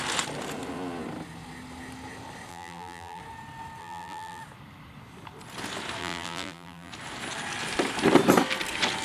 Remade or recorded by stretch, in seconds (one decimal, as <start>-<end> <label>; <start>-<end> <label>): 0.0-2.5 recorded; 2.5-3.2 remade; 3.2-3.8 recorded; 3.8-4.4 remade; 4.4-6.0 recorded; 6.0-6.9 remade; 6.9-9.0 recorded